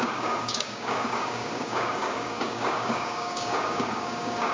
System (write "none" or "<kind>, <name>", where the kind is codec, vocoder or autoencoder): codec, DAC